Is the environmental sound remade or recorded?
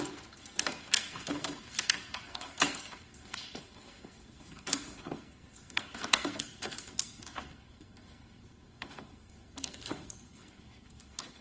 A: remade